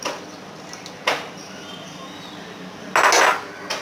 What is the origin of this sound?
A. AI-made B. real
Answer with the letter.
B